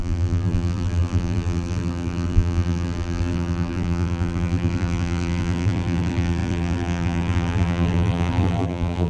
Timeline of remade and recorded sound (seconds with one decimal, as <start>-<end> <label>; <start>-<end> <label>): 0.0-9.1 remade